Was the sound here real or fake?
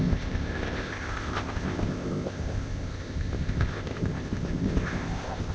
fake